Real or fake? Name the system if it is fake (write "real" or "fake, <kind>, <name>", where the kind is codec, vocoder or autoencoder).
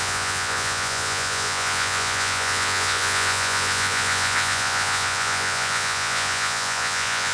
fake, vocoder, Vocos